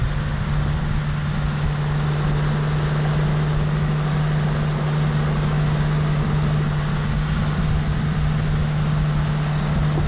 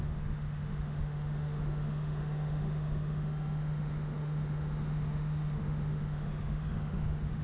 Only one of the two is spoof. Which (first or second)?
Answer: second